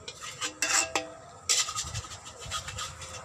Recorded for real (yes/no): yes